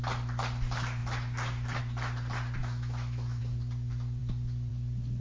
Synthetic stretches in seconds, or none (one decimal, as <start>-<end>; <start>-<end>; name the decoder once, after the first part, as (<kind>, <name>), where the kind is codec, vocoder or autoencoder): 2.6-3.4 (autoencoder, DAC-VAE)